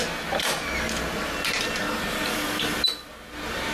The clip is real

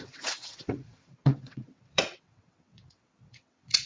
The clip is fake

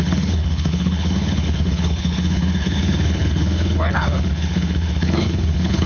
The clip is fake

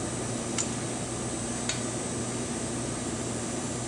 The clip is real